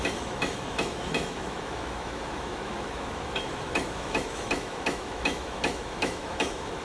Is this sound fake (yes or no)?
yes